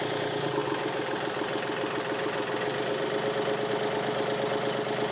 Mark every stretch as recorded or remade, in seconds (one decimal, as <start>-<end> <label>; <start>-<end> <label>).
0.0-5.1 recorded